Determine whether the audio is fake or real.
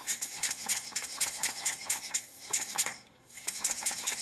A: fake